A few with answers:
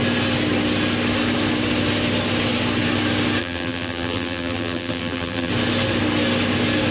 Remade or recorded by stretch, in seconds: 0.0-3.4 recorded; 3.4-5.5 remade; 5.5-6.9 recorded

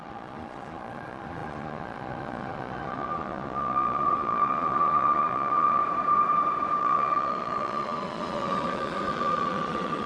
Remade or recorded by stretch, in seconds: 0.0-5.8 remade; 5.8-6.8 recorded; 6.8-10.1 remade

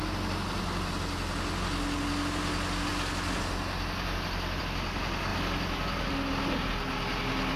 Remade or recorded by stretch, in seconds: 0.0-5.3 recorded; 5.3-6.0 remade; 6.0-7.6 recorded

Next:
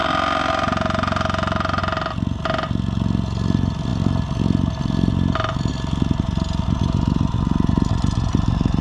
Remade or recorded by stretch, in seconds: 0.0-8.8 recorded

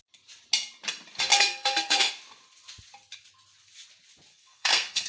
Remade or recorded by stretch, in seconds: 0.0-1.3 recorded; 1.3-2.1 remade; 2.1-4.3 recorded; 4.3-5.1 remade

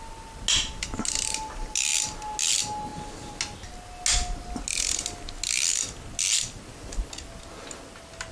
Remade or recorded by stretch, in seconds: 0.0-8.3 recorded